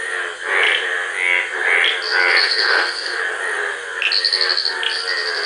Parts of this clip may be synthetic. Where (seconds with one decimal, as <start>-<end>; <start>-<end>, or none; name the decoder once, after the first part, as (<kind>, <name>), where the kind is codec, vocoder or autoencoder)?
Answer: 2.4-3.2 (codec, SNAC)